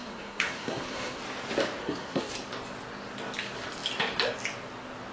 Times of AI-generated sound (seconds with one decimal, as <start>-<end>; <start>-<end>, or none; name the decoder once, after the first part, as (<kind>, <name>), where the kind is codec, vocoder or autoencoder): 0.0-1.2 (codec, SNAC); 1.8-2.3